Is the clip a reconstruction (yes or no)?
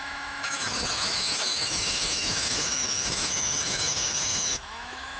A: yes